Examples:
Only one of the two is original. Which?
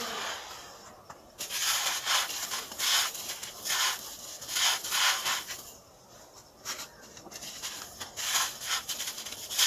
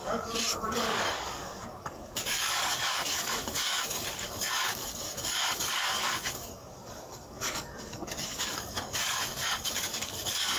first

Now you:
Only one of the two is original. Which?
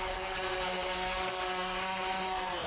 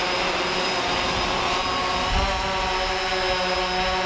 second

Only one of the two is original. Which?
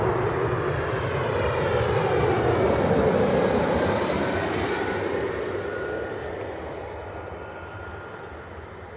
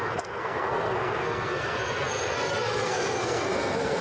first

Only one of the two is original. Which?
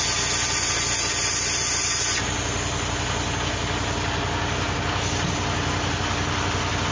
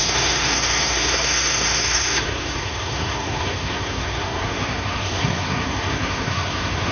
first